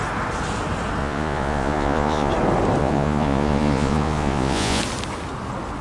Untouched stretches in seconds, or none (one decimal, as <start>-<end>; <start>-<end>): 0.0-1.0; 2.3-2.8; 4.8-5.8